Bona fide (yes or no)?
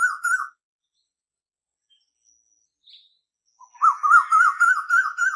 yes